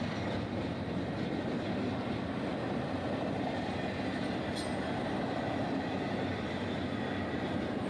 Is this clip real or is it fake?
real